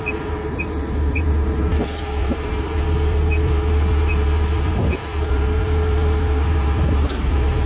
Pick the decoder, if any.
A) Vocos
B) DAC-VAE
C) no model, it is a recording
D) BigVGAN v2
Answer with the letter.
D